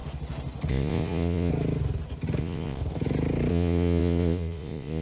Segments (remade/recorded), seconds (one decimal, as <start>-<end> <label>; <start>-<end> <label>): 0.0-0.7 recorded; 0.7-1.5 remade; 1.5-2.4 recorded; 2.4-2.8 remade; 2.8-3.5 recorded; 3.5-5.0 remade